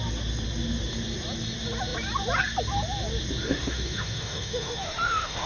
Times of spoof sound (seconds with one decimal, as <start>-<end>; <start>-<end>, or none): 3.4-5.5